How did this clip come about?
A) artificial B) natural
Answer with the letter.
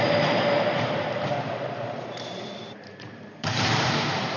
A